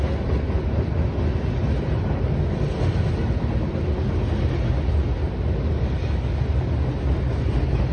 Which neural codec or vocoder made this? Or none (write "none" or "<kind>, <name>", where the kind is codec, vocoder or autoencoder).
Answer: none